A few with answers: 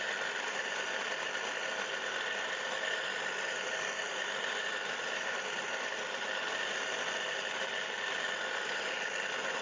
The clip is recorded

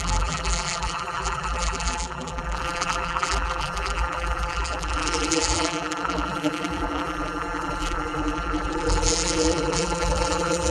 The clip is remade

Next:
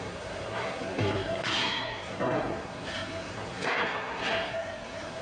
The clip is remade